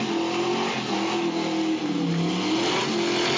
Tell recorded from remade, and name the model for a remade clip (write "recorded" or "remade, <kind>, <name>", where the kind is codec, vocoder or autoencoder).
recorded